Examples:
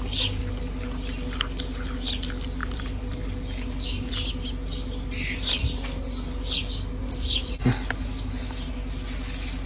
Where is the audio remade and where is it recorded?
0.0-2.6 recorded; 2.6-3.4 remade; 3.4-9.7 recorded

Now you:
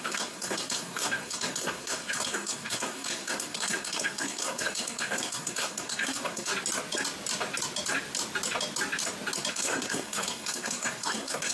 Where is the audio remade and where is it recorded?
0.0-6.5 remade; 6.5-9.5 recorded; 9.5-11.5 remade

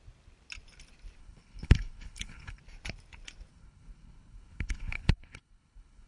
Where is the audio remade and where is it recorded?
0.0-1.2 recorded; 1.2-2.6 remade; 2.6-3.5 recorded; 3.5-6.1 remade

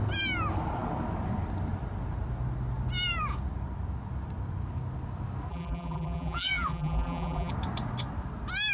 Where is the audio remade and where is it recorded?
0.0-5.5 recorded; 5.5-7.5 remade; 7.5-8.7 recorded